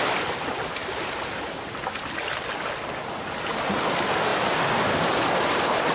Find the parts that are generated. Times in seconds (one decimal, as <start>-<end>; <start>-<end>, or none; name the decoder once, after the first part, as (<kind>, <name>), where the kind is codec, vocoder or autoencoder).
none